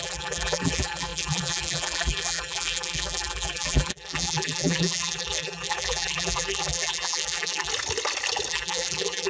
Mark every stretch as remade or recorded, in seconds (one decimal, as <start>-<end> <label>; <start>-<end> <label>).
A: 0.0-7.7 remade; 7.7-8.5 recorded; 8.5-9.3 remade